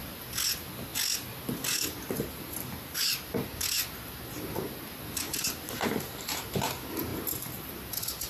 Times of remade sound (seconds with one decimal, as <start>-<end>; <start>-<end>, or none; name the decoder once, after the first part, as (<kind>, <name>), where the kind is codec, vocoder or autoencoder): none